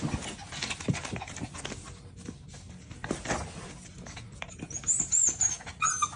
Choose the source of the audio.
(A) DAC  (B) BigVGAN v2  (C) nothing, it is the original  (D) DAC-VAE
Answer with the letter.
C